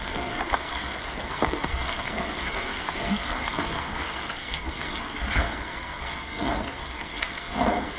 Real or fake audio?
fake